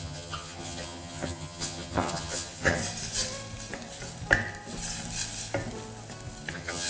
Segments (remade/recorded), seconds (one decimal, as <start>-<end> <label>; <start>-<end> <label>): 0.0-2.8 remade; 2.8-6.5 recorded; 6.5-6.9 remade